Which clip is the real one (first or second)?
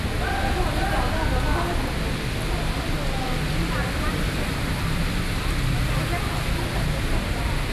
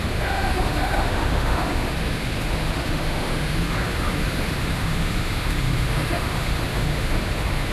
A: first